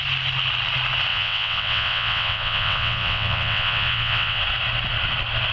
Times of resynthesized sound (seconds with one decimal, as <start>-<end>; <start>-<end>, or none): 1.1-4.4